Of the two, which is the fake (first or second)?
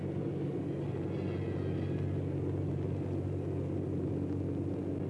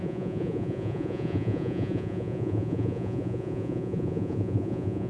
second